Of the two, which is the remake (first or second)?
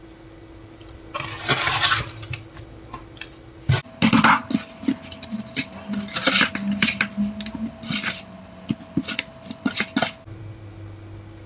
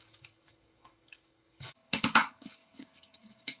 second